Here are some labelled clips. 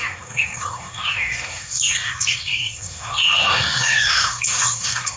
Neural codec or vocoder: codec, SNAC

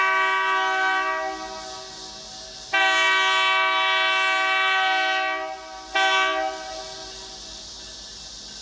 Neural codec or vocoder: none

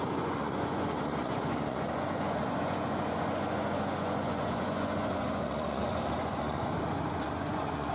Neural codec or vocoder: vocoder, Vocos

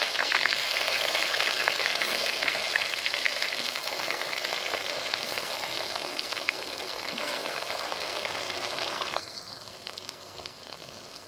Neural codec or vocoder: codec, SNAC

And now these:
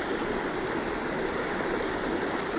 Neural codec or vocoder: none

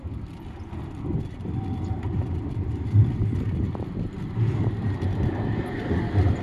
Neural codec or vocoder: vocoder, BigVGAN v2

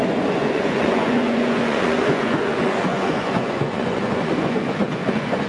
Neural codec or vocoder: vocoder, Vocos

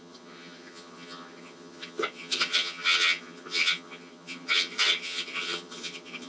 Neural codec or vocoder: vocoder, HiFi-GAN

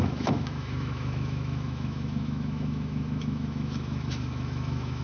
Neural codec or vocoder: autoencoder, DAC-VAE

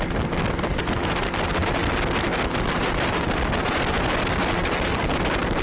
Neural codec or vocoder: none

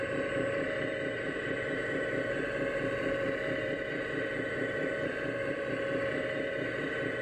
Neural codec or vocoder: vocoder, BigVGAN v2